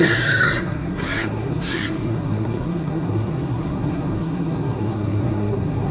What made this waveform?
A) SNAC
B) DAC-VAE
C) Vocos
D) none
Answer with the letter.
A